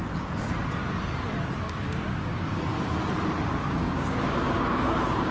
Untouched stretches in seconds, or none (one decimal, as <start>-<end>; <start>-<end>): 0.0-1.6; 2.3-3.6